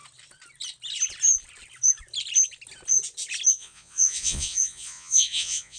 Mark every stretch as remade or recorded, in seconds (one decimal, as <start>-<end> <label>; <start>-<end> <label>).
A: 0.0-3.5 recorded; 3.5-5.8 remade